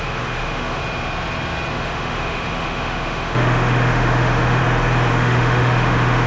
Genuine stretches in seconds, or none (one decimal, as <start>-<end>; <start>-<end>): 0.8-1.7; 4.6-5.1